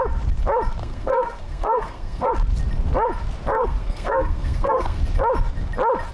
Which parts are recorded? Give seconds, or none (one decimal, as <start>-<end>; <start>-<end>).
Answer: 0.0-0.8; 2.3-3.5; 5.0-6.1